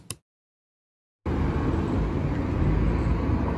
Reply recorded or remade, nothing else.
recorded